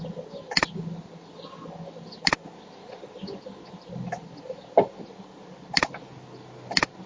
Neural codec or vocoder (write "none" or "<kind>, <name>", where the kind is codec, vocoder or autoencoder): none